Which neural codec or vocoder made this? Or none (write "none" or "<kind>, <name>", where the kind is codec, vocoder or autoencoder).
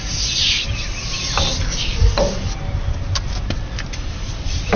none